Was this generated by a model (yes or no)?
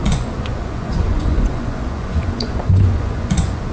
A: yes